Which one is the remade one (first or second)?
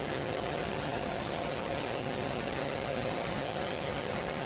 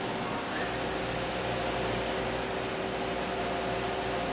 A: first